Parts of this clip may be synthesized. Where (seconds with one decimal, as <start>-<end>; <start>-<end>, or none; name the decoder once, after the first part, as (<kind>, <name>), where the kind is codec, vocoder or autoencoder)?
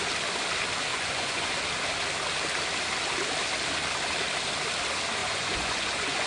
0.9-1.5 (vocoder, Vocos); 5.2-6.3